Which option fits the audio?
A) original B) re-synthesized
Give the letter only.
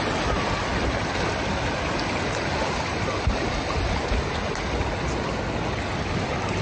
A